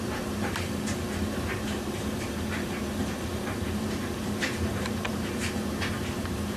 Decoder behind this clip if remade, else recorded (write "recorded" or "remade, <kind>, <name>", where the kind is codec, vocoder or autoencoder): remade, vocoder, BigVGAN v2